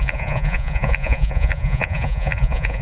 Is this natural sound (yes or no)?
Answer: no